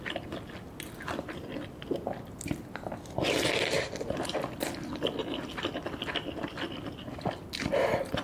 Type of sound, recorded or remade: recorded